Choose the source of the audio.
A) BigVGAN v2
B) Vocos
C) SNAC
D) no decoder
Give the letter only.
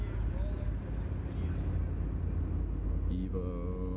D